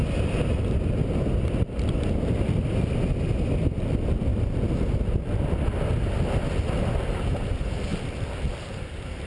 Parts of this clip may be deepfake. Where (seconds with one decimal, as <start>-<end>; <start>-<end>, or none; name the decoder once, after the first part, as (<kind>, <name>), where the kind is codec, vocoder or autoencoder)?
none